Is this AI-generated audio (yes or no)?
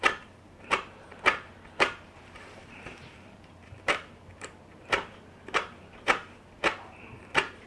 yes